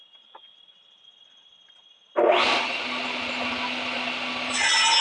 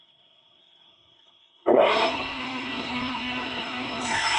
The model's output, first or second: second